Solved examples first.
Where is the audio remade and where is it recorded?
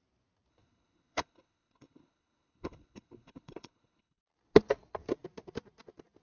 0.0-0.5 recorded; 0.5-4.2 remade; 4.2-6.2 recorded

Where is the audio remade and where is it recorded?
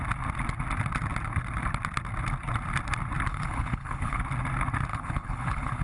0.0-3.3 recorded; 3.3-4.2 remade; 4.2-4.9 recorded; 4.9-5.8 remade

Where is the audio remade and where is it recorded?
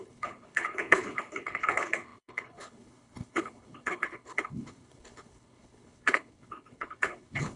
0.0-7.6 remade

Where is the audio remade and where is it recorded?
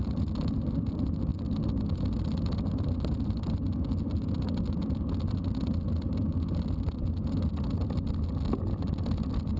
0.0-9.6 recorded